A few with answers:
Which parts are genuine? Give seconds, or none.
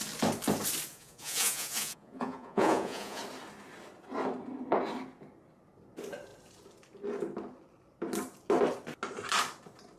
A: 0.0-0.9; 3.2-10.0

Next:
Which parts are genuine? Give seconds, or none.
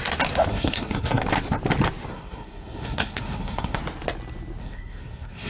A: 0.0-0.5; 1.2-2.1; 3.8-4.6